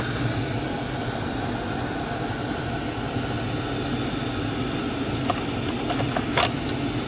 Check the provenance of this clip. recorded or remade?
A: recorded